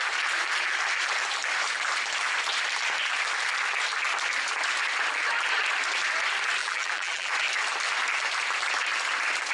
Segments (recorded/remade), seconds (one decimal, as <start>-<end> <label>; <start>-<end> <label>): 0.0-6.6 recorded; 6.6-7.3 remade; 7.3-9.5 recorded